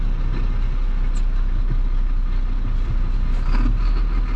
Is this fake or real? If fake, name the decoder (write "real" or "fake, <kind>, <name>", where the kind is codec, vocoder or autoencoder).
real